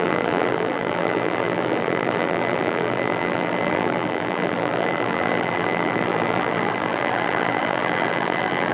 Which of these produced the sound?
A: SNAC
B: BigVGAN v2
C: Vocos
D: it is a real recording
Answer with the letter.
B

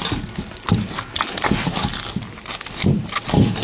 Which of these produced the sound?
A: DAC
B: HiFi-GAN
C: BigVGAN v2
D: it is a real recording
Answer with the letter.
D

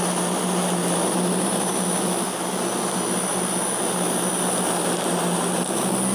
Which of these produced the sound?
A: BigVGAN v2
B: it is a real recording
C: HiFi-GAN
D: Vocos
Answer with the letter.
B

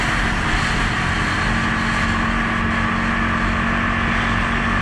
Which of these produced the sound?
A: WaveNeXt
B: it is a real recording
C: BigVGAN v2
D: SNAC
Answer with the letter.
B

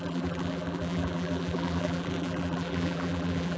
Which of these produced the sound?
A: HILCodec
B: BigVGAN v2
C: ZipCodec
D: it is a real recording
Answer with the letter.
B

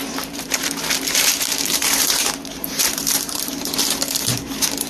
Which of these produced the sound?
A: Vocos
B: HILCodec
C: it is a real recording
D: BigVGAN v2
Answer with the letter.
D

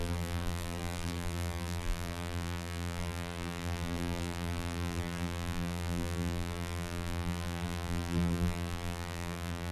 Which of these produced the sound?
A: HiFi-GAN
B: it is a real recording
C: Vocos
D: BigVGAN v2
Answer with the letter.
D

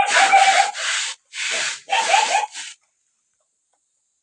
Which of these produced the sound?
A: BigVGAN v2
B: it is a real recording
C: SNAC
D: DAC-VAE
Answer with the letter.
B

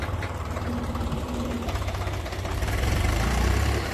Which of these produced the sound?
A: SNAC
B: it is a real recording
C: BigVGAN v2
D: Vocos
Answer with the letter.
C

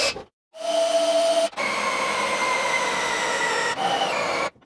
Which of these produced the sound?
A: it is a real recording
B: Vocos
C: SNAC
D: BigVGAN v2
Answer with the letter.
A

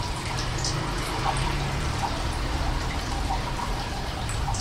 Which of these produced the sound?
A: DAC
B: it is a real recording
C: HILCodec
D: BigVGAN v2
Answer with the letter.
D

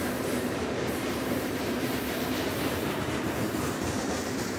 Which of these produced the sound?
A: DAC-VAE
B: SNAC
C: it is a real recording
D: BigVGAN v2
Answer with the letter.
D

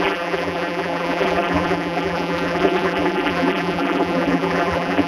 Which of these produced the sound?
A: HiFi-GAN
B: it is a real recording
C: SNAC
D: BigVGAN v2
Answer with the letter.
D